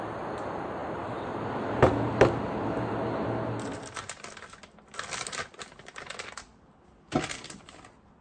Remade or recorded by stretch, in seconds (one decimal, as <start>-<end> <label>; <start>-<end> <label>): 0.0-0.8 recorded; 0.8-2.1 remade; 2.1-8.2 recorded